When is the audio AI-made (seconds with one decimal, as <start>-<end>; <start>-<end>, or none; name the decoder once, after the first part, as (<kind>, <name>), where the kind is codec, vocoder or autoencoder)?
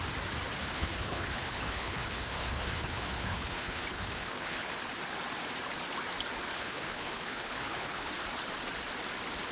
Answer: 0.6-4.7 (codec, HILCodec); 6.5-8.1